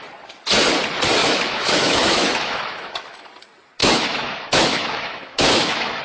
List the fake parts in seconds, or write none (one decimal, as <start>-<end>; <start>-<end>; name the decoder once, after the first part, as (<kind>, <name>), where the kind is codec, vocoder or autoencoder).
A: 1.2-3.2 (autoencoder, DAC-VAE); 3.8-6.0